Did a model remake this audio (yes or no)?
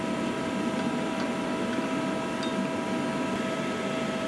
no